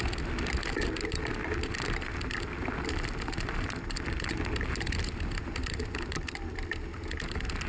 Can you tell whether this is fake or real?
real